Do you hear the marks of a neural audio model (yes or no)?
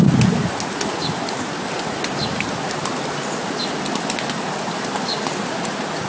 no